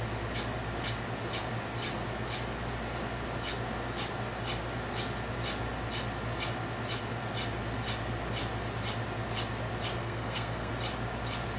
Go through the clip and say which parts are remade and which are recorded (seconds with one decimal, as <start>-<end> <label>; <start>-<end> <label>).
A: 0.0-10.0 recorded; 10.0-10.7 remade; 10.7-11.6 recorded